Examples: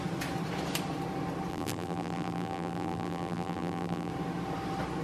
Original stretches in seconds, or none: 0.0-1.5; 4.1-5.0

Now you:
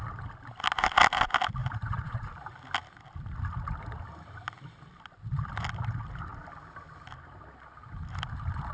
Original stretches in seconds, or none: 0.0-1.6; 2.3-8.7

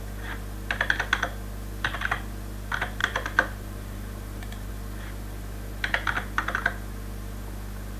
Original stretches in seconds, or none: 0.0-3.0; 4.7-8.0

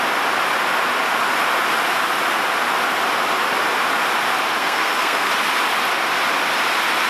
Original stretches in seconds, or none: 0.0-4.6; 5.3-7.1

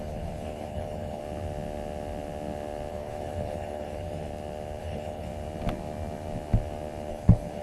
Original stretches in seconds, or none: 1.2-2.9; 4.3-4.8; 5.3-7.1

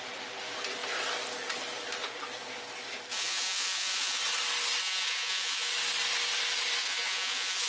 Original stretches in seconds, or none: 0.0-3.1; 4.2-4.8; 5.7-6.8